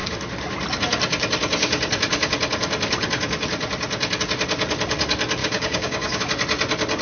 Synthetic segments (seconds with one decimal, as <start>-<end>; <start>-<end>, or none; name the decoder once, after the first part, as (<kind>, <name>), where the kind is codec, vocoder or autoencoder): 5.4-6.2 (codec, DAC)